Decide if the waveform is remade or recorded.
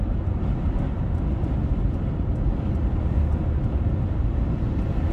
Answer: recorded